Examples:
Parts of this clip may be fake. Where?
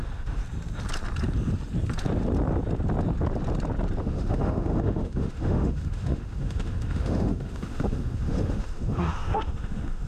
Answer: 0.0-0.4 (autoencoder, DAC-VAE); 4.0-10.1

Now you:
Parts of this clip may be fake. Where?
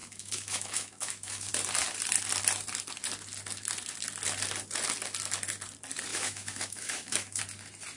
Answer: 0.0-1.5 (autoencoder, DAC-VAE); 6.1-7.4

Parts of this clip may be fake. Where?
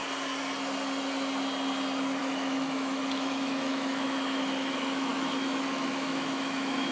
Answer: 2.2-6.9 (autoencoder, DAC-VAE)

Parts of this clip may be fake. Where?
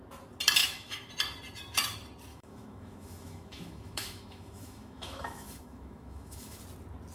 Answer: 0.6-1.1 (autoencoder, DAC-VAE); 2.3-6.6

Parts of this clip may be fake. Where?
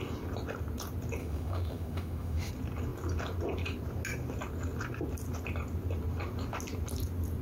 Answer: 1.2-2.5 (autoencoder, DAC-VAE)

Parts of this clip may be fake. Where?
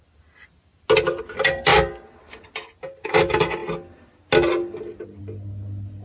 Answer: none